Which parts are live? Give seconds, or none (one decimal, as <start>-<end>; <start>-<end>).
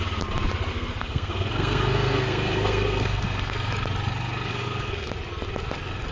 0.0-0.7; 3.7-4.5; 5.1-6.1